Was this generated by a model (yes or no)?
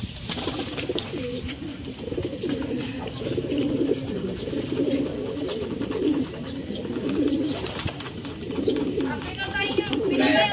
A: yes